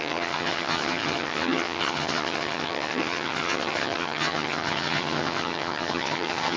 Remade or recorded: remade